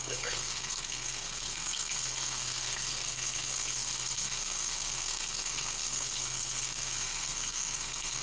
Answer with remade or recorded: remade